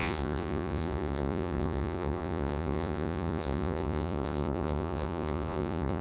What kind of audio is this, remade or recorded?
remade